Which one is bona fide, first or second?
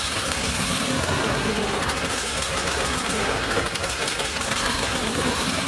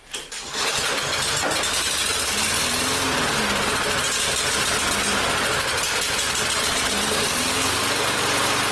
second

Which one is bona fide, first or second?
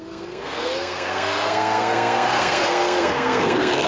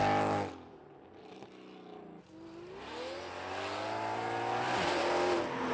second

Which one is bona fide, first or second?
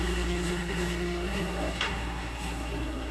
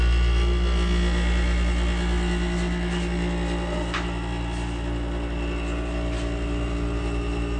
second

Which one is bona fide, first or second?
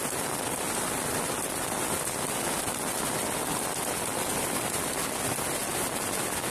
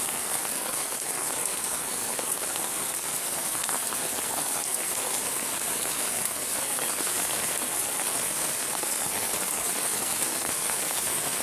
first